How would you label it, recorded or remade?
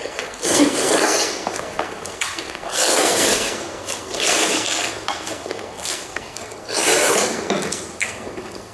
remade